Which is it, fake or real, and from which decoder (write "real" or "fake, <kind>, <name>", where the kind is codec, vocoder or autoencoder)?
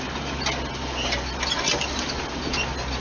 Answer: real